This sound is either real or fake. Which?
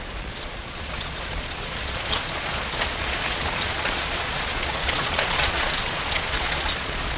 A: fake